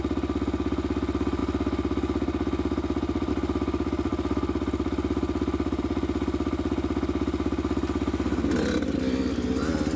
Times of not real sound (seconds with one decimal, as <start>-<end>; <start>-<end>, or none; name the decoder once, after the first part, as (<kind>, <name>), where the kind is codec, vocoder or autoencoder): none